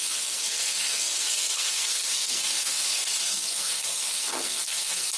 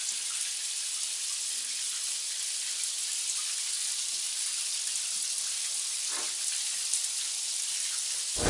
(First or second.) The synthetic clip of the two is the first